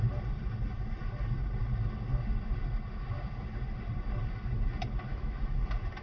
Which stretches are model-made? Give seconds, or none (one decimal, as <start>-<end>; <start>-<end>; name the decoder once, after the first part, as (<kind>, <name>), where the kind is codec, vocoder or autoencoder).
5.1-5.6 (autoencoder, DAC-VAE)